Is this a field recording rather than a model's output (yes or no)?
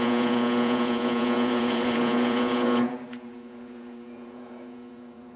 no